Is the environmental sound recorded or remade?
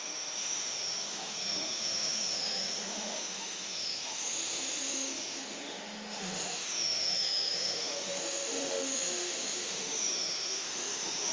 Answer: remade